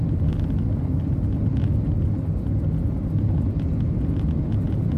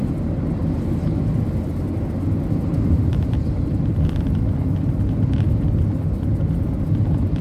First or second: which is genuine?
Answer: first